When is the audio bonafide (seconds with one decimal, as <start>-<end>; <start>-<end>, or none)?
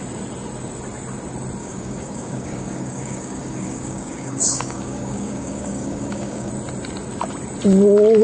0.0-1.6; 6.5-8.2